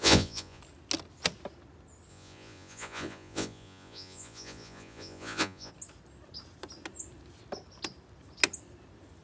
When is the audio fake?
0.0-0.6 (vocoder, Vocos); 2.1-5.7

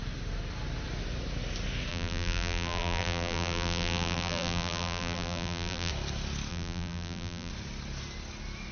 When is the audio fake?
1.9-5.9 (vocoder, BigVGAN v2); 6.5-7.5